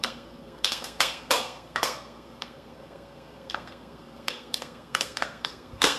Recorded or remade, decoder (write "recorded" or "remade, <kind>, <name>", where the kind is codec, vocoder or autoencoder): remade, codec, SNAC